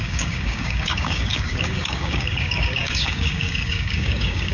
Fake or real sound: fake